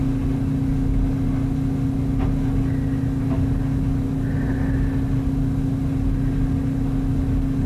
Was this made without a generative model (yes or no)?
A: yes